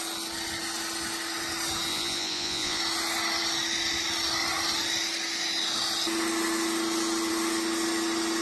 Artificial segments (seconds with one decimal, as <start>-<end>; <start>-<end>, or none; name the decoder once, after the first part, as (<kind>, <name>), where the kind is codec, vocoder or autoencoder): 1.9-2.8 (vocoder, Vocos)